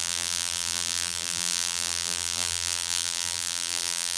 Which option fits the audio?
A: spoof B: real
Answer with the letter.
A